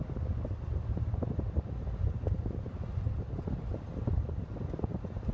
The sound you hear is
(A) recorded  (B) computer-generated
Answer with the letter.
A